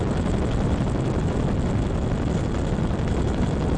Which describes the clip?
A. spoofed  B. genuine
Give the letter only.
B